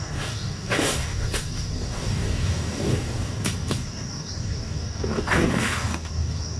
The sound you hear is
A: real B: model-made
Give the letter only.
B